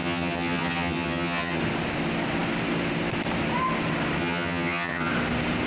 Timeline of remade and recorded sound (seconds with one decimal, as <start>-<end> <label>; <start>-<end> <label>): 0.0-1.6 remade; 1.6-4.2 recorded; 4.2-5.1 remade; 5.1-5.7 recorded